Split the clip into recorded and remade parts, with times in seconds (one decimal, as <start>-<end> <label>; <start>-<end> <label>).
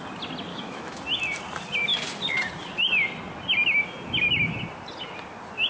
0.0-0.5 recorded; 0.5-1.0 remade; 1.0-5.7 recorded